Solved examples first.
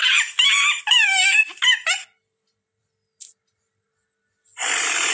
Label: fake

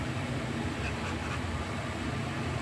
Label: fake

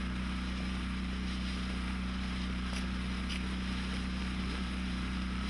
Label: fake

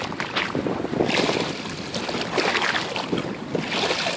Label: real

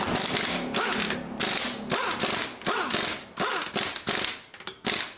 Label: real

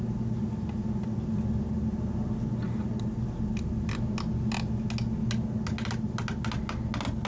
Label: real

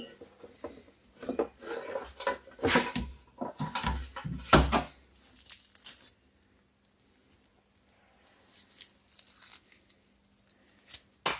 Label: real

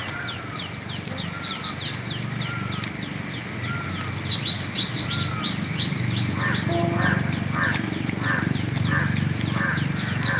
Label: real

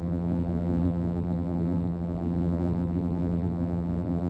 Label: fake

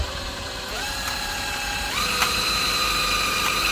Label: fake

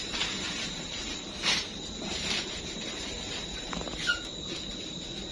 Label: fake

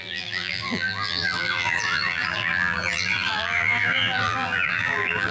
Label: fake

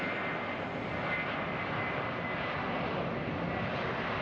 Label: real